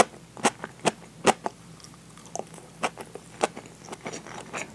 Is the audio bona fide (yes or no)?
yes